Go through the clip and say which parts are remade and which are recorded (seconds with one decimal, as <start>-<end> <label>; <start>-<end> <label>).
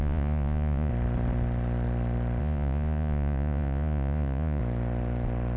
0.0-0.9 remade; 0.9-2.4 recorded; 2.4-4.6 remade; 4.6-5.6 recorded